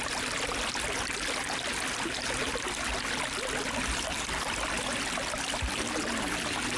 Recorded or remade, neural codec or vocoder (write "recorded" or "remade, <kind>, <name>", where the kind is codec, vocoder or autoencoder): recorded